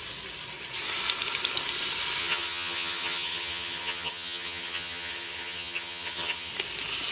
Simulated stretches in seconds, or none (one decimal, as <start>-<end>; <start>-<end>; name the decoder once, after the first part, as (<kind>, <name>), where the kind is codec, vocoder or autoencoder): 2.2-6.5 (vocoder, HiFi-GAN)

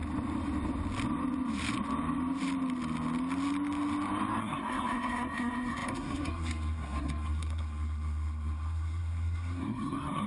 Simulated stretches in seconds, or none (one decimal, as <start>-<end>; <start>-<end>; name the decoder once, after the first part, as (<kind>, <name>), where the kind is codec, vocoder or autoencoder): 4.4-10.3 (codec, SNAC)

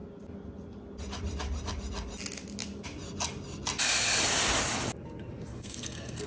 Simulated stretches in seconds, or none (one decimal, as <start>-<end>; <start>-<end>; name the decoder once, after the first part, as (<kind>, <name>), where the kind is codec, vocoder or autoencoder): 5.5-6.3 (codec, SNAC)

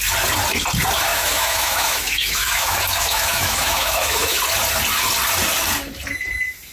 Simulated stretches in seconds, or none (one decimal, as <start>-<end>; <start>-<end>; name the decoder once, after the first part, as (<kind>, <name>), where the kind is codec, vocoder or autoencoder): 1.1-4.4 (autoencoder, DAC-VAE)

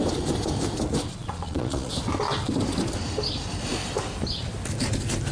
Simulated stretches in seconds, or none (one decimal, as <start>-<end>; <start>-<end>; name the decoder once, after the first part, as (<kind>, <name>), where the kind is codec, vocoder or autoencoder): 1.1-1.9 (vocoder, Vocos)

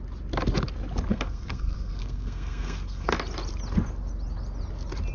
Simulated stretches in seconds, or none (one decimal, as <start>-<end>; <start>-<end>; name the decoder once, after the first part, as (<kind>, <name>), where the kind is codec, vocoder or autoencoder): 1.1-3.1 (codec, SNAC)

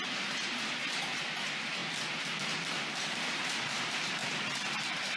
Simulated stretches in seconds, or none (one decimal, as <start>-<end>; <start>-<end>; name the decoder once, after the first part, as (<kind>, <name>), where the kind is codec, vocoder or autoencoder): none

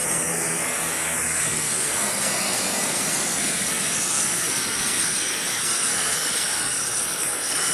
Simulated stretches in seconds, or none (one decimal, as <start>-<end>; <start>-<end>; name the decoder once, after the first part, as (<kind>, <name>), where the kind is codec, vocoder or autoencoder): 0.0-7.7 (codec, SNAC)